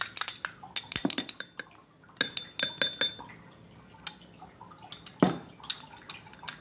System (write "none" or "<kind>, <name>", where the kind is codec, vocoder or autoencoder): none